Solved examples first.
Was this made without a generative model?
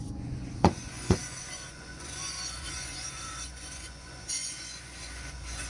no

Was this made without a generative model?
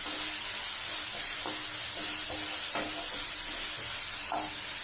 yes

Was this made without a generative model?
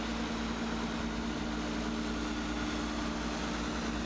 yes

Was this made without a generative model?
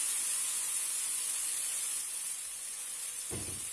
no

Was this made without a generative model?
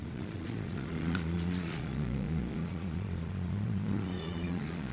no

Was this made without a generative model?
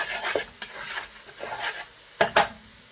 yes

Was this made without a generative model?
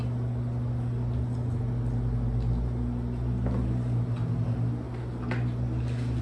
yes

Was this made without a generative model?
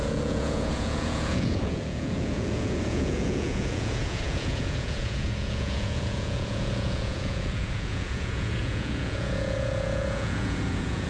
no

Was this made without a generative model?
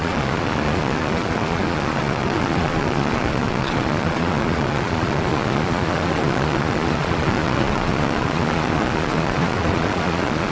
no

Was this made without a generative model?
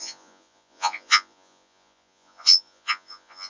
no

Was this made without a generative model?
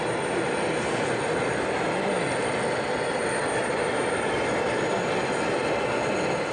yes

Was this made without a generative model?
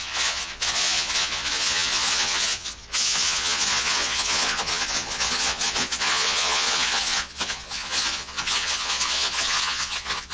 no